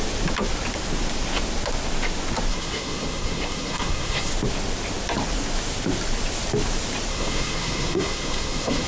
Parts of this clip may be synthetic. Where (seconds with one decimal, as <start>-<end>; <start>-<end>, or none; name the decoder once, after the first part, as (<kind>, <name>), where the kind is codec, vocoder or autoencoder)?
2.5-4.3 (codec, SNAC); 7.1-8.9